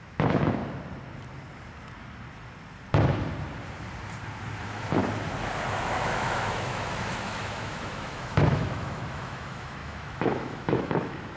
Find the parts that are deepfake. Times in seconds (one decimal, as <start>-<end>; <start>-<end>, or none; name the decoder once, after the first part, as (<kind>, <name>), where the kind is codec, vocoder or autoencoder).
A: 0.0-0.6 (autoencoder, DAC-VAE); 4.6-5.0; 5.7-11.4